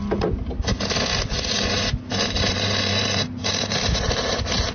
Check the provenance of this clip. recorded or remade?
recorded